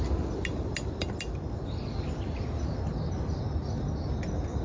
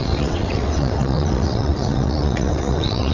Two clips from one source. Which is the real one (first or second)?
first